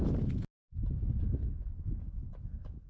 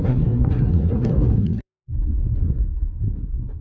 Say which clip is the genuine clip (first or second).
first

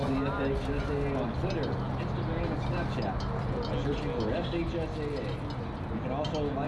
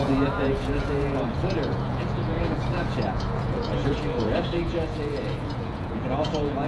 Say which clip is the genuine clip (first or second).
first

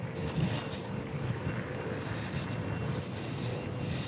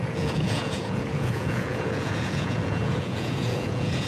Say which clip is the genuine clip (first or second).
first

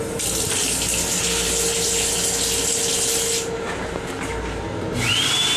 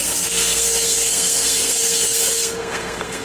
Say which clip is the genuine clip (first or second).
first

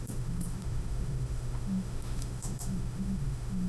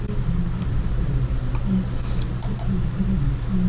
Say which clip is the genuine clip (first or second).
second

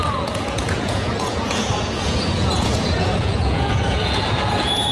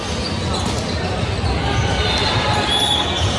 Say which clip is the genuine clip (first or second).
second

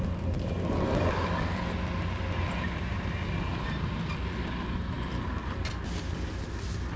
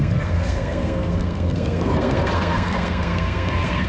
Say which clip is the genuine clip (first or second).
first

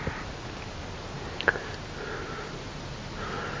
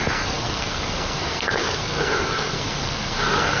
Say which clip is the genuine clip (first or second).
first